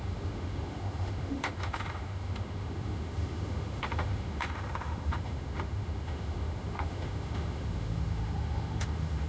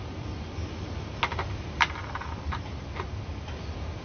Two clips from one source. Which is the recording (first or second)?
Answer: second